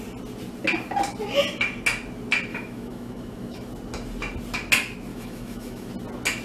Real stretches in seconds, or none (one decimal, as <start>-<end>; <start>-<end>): 0.0-2.5; 3.7-5.1; 5.9-6.4